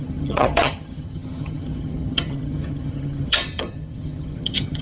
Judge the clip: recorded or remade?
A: remade